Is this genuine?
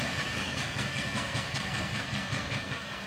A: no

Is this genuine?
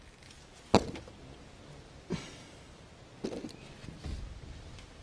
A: yes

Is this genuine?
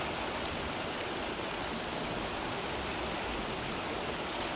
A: yes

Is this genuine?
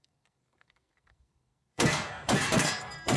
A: no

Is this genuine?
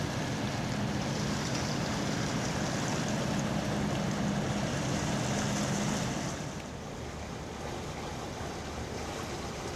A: yes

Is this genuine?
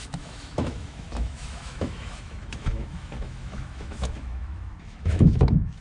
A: no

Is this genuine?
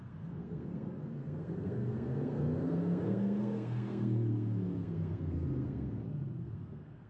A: no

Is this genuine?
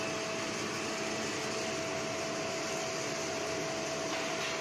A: yes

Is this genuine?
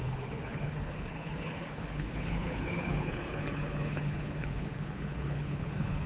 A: no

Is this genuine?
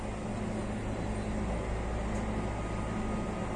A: yes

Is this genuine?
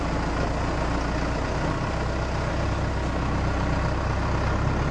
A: yes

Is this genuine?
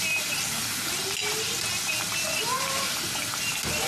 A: yes